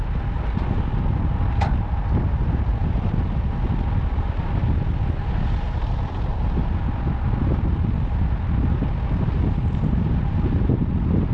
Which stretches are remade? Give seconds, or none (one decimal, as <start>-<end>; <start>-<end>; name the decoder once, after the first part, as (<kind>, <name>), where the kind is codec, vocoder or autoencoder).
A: none